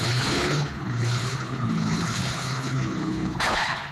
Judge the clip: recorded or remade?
remade